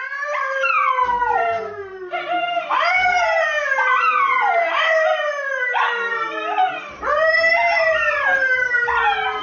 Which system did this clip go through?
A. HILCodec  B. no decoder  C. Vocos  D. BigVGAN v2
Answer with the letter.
D